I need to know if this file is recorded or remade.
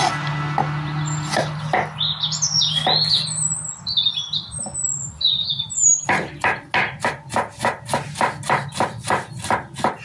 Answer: recorded